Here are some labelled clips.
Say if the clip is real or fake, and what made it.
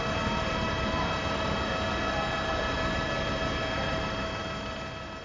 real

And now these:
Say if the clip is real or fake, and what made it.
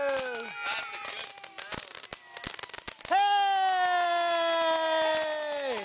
real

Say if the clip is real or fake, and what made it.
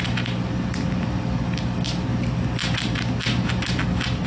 real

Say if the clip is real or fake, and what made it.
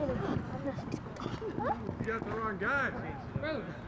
real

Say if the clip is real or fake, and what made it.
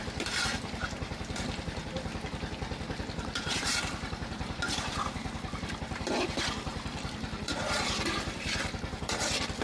fake, vocoder, BigVGAN v2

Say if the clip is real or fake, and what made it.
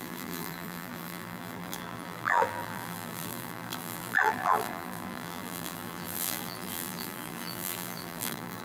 fake, vocoder, BigVGAN v2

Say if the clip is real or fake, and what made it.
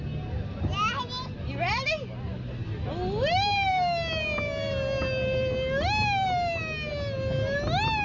real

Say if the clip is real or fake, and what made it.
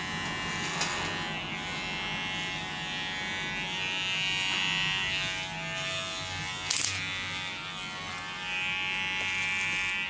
real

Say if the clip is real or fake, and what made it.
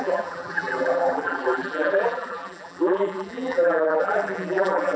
fake, vocoder, BigVGAN v2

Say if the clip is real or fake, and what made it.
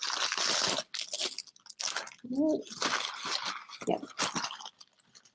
real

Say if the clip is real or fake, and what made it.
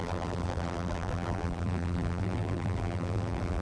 fake, vocoder, BigVGAN v2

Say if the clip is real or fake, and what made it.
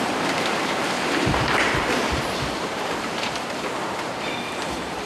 fake, vocoder, BigVGAN v2